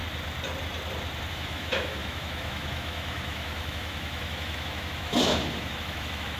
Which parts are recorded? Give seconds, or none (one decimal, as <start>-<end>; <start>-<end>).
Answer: 0.0-1.3